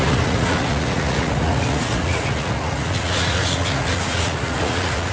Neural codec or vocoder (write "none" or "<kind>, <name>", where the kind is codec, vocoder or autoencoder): vocoder, Vocos